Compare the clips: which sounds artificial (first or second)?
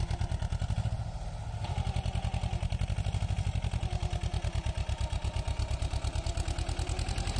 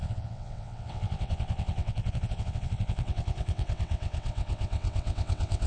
second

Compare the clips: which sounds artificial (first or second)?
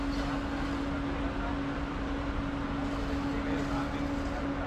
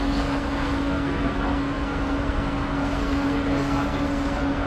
second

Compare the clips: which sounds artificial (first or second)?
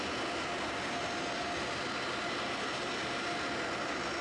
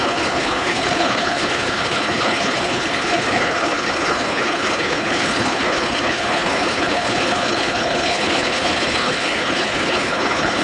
second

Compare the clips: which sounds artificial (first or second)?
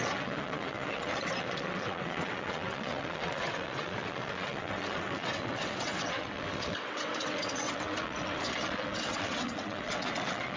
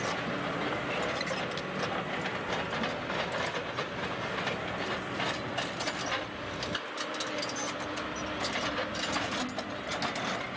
first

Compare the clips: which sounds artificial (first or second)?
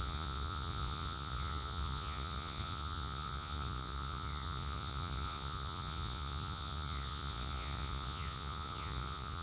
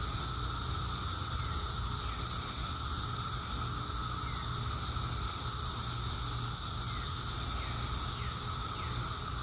first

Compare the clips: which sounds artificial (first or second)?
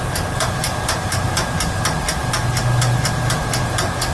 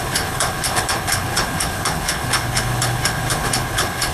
second